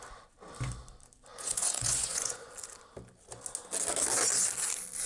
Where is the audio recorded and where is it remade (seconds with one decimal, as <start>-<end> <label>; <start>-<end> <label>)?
0.0-1.3 recorded; 1.3-2.5 remade; 2.5-5.1 recorded